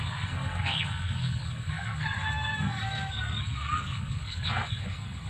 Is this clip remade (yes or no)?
yes